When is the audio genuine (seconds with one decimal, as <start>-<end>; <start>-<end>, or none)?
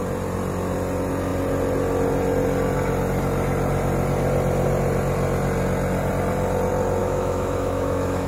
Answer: 0.0-7.0